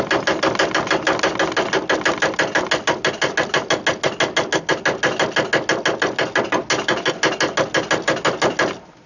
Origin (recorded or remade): recorded